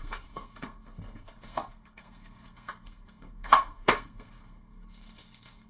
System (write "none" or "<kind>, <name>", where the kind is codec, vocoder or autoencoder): codec, SNAC